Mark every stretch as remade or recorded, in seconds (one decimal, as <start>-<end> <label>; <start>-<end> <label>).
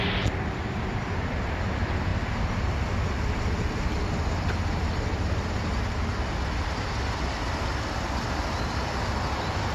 0.0-9.7 recorded